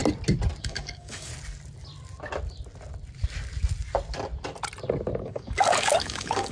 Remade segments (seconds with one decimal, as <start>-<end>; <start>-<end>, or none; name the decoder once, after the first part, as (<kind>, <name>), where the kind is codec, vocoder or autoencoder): 0.6-1.3 (codec, DAC); 5.2-6.5